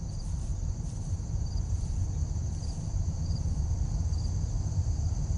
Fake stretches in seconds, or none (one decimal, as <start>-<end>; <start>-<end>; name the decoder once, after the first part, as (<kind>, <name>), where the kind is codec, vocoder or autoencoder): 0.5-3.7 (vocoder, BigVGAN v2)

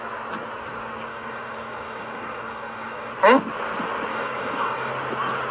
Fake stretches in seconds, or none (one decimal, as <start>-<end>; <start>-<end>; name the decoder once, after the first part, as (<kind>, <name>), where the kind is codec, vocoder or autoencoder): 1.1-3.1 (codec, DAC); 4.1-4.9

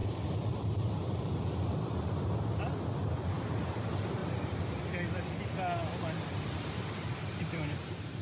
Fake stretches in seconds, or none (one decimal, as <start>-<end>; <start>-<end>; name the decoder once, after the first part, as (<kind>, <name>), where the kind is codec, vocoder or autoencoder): 0.0-1.4 (vocoder, BigVGAN v2); 4.2-4.8; 5.8-8.2

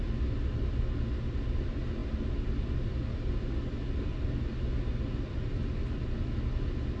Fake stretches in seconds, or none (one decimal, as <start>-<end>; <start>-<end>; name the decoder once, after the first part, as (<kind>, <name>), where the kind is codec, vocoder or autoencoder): none

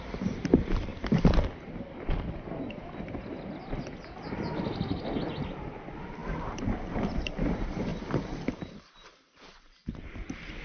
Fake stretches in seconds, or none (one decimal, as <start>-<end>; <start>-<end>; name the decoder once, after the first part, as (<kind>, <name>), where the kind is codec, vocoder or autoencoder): 0.0-0.9 (vocoder, BigVGAN v2); 5.4-10.6